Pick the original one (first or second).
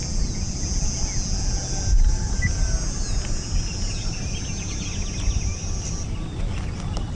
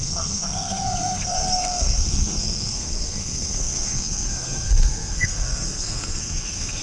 first